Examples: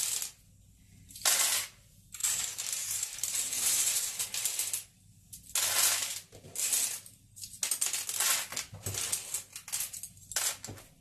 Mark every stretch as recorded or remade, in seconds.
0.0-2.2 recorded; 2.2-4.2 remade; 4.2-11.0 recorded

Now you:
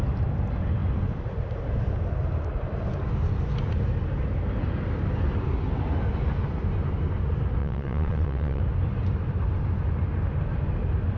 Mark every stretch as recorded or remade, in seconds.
0.0-7.6 recorded; 7.6-8.6 remade; 8.6-11.2 recorded

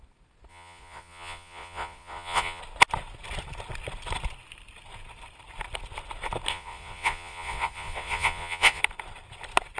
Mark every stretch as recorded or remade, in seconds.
0.0-0.5 recorded; 0.5-2.6 remade; 2.6-6.5 recorded; 6.5-8.8 remade; 8.8-9.8 recorded

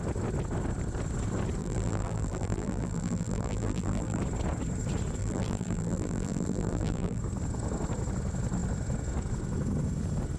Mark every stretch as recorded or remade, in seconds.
0.0-1.6 recorded; 1.6-4.2 remade; 4.2-5.2 recorded; 5.2-7.2 remade; 7.2-10.4 recorded

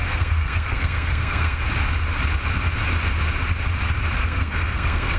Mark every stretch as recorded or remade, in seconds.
0.0-1.6 remade; 1.6-4.2 recorded; 4.2-5.2 remade